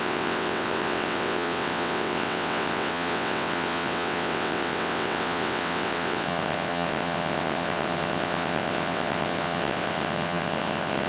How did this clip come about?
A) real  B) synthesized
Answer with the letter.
B